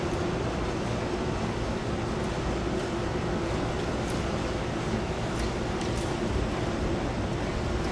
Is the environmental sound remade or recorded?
recorded